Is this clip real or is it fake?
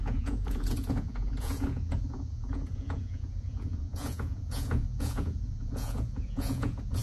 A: fake